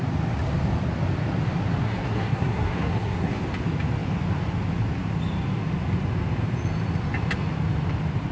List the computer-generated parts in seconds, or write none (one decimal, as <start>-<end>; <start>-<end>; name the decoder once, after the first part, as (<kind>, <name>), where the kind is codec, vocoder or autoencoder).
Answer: 1.8-3.4 (codec, SNAC)